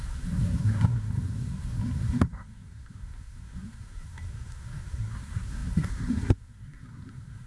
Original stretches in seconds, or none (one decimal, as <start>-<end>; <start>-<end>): none